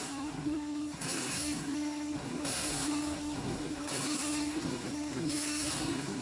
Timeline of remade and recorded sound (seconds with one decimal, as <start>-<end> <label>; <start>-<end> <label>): 0.0-6.2 remade